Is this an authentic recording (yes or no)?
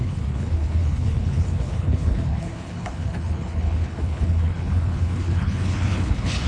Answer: no